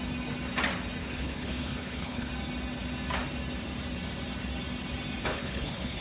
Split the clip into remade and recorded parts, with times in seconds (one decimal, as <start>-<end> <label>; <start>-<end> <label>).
0.0-1.0 recorded; 1.0-2.3 remade; 2.3-5.2 recorded; 5.2-6.0 remade

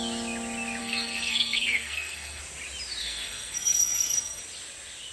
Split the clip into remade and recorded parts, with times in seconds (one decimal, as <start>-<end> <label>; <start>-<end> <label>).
0.0-0.8 recorded; 0.8-2.4 remade; 2.4-3.0 recorded; 3.0-4.4 remade; 4.4-5.1 recorded

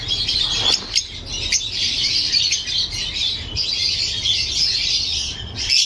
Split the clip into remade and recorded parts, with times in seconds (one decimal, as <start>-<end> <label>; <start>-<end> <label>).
0.0-5.9 recorded

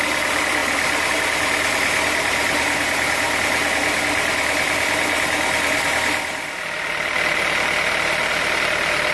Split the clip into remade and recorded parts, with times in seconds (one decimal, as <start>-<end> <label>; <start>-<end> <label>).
0.0-9.1 recorded

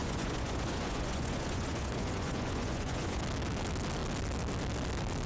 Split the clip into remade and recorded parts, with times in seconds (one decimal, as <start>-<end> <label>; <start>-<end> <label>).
0.0-3.2 remade; 3.2-5.3 recorded

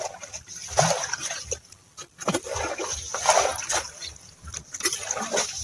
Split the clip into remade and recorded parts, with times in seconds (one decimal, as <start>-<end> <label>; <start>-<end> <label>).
0.0-0.6 remade; 0.6-2.5 recorded; 2.5-5.6 remade